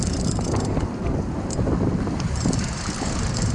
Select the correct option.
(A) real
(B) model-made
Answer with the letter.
A